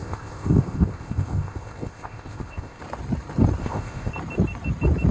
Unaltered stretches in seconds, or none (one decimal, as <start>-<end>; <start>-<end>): 2.8-3.6; 4.1-5.1